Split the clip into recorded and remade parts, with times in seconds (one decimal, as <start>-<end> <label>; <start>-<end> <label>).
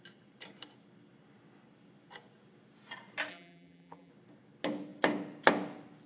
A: 0.0-3.3 recorded; 3.3-4.1 remade; 4.1-6.1 recorded